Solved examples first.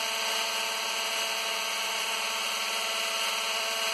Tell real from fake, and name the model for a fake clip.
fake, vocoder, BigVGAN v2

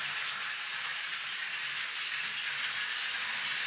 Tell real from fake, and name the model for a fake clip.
real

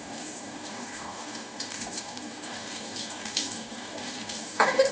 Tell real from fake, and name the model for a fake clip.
fake, codec, DAC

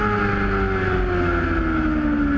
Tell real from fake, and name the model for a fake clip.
real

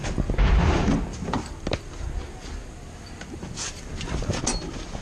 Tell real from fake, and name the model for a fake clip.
real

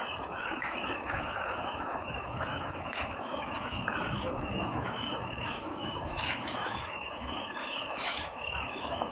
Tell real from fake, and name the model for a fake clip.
fake, autoencoder, DAC-VAE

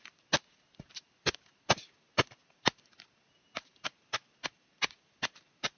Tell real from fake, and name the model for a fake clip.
real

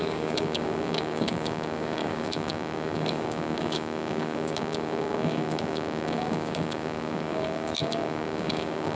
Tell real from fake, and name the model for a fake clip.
fake, codec, DAC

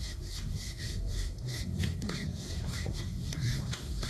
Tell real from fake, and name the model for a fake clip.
fake, codec, SNAC